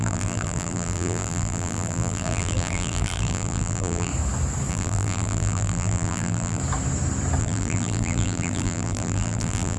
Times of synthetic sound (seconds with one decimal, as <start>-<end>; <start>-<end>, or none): 0.0-4.1; 4.7-6.6; 7.4-9.8